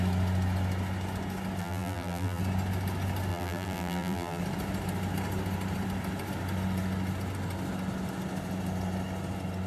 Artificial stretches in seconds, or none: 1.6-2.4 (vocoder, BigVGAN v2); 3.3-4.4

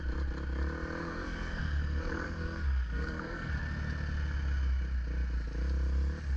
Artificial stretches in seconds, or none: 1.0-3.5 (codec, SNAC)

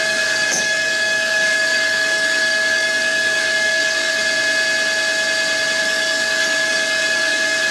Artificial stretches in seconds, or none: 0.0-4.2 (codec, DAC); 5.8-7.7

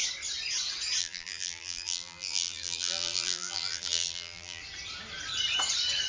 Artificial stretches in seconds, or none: 1.0-4.6 (vocoder, BigVGAN v2)